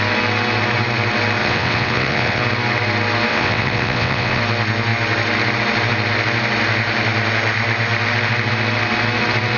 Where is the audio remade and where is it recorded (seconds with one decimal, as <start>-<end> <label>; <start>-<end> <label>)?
0.0-1.4 recorded; 1.4-2.4 remade; 2.4-3.3 recorded; 3.3-4.4 remade; 4.4-9.6 recorded